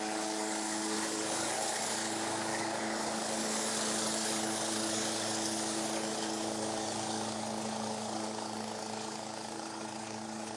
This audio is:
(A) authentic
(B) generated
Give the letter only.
B